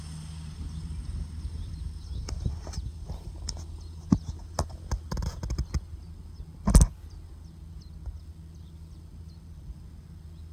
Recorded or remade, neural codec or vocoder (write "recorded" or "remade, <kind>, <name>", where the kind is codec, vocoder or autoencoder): recorded